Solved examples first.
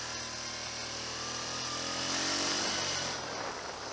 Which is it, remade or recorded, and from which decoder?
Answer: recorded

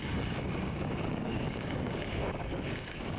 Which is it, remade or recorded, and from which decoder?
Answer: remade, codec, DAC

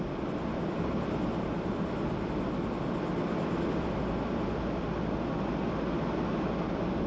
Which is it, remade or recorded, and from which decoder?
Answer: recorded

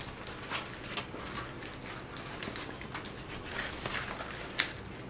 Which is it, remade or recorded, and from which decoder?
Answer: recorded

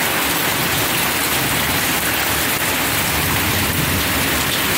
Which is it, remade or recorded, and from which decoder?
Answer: recorded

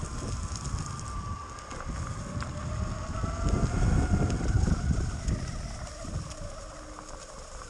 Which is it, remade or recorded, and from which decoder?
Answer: recorded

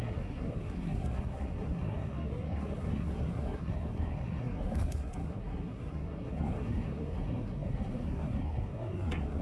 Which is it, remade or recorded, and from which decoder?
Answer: remade, codec, SNAC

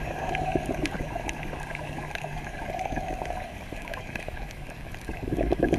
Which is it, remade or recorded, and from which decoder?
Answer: remade, codec, DAC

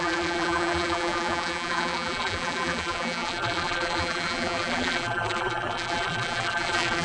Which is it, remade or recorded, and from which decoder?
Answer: remade, vocoder, BigVGAN v2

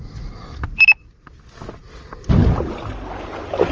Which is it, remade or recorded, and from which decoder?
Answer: recorded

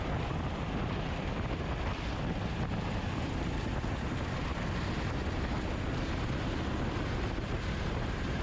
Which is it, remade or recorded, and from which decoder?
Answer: recorded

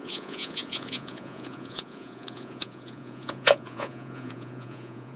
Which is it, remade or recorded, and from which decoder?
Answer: remade, vocoder, Vocos